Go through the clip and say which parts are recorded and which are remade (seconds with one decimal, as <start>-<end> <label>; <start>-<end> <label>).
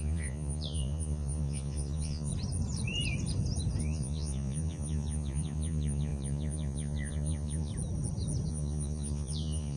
0.0-2.3 remade; 2.3-3.8 recorded; 3.8-7.7 remade; 7.7-8.5 recorded; 8.5-9.8 remade